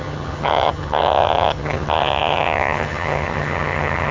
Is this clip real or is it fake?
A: fake